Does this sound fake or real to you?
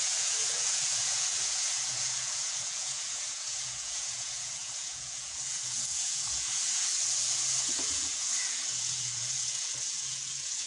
fake